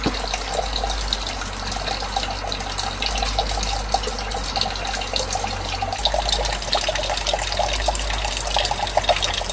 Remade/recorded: recorded